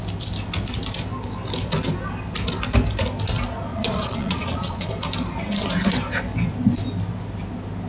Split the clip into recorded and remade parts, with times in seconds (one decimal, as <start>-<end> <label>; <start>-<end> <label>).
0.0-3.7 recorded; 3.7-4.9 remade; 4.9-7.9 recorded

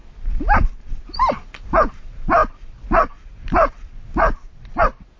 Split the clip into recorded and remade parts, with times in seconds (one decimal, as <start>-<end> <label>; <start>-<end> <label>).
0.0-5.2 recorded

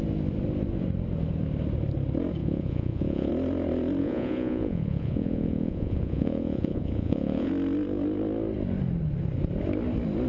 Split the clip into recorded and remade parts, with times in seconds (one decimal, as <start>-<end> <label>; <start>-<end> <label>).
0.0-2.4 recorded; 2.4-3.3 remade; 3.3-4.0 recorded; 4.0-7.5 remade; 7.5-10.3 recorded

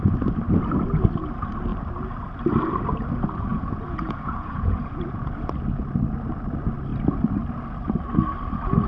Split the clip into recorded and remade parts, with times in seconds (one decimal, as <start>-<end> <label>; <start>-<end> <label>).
0.0-3.5 recorded; 3.5-5.3 remade; 5.3-8.9 recorded